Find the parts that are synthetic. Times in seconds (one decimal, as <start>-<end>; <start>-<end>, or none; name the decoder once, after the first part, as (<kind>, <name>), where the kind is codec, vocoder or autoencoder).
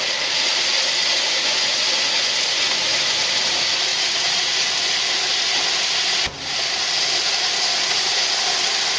0.7-3.5 (vocoder, Vocos); 3.9-5.1